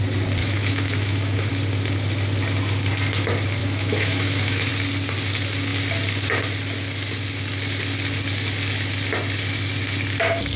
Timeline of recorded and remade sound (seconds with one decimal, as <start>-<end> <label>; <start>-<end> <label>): 0.0-0.4 recorded; 0.4-1.5 remade; 1.5-3.6 recorded; 3.6-4.7 remade; 4.7-10.6 recorded